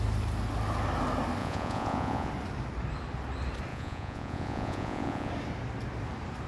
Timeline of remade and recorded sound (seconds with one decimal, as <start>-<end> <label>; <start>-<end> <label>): 0.0-1.4 recorded; 1.4-2.3 remade; 2.3-3.7 recorded; 3.7-5.3 remade; 5.3-6.5 recorded